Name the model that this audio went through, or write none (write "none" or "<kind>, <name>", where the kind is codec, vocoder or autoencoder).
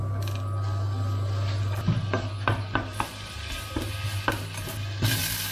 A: none